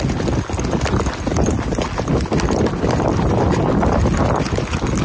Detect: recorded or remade recorded